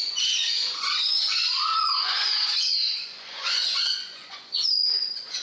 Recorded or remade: remade